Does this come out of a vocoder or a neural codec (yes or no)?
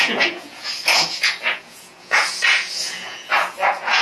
yes